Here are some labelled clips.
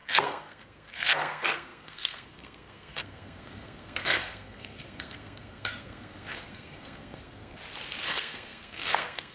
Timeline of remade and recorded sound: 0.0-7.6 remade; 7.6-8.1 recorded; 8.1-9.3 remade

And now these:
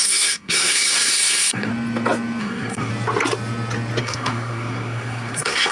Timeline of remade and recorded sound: 0.0-1.7 remade; 1.7-2.4 recorded; 2.4-2.9 remade; 2.9-4.0 recorded; 4.0-5.7 remade

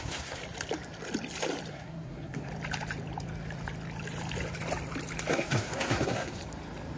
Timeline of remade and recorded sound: 0.0-0.4 remade; 0.4-1.7 recorded; 1.7-2.5 remade; 2.5-5.3 recorded; 5.3-6.4 remade; 6.4-7.0 recorded

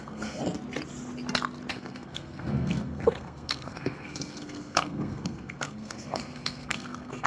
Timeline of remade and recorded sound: 0.0-0.4 remade; 0.4-1.7 recorded; 1.7-7.3 remade

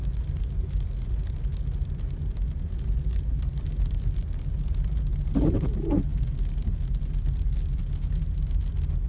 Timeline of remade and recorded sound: 0.0-9.1 recorded